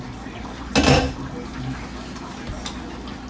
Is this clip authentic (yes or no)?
yes